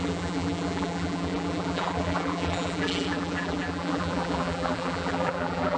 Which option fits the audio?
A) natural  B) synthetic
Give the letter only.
B